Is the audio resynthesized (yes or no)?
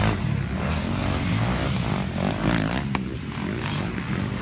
no